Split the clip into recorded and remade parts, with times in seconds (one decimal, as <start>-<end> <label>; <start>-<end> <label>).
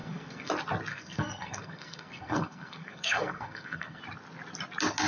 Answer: 0.0-0.5 remade; 0.5-0.9 recorded; 0.9-4.0 remade; 4.0-5.1 recorded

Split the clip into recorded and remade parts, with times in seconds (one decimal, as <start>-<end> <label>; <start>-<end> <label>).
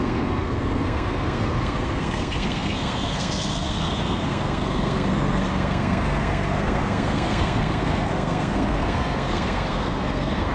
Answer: 0.0-10.5 remade